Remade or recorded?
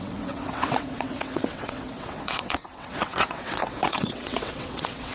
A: remade